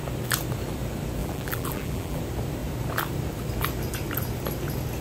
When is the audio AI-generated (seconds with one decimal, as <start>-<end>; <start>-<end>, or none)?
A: 1.2-2.2